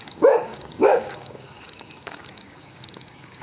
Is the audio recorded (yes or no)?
no